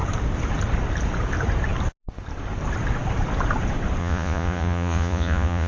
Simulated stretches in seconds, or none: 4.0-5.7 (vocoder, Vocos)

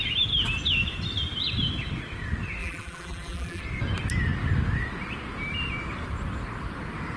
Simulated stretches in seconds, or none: 2.6-3.6 (vocoder, BigVGAN v2)

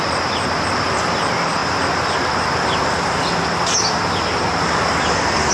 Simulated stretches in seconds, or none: 0.0-1.6 (vocoder, BigVGAN v2); 4.9-5.5

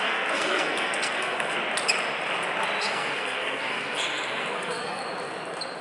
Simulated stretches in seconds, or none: 0.0-1.6 (codec, SNAC); 2.8-5.0

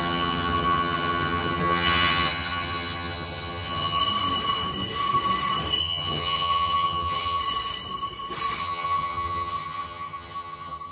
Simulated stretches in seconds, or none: 0.0-4.0 (vocoder, HiFi-GAN); 5.8-7.4; 8.6-10.9

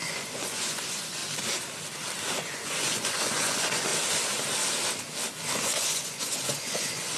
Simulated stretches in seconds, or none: 0.0-1.2 (vocoder, Vocos); 2.3-3.9; 5.5-7.2

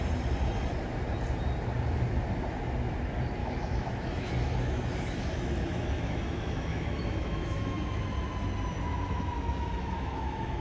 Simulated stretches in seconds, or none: 3.4-8.0 (autoencoder, DAC-VAE); 8.9-10.6

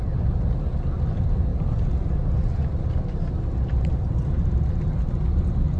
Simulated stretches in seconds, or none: none